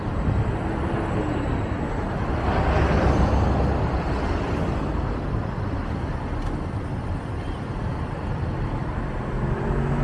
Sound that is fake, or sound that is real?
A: real